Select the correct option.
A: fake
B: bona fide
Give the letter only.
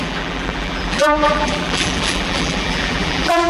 A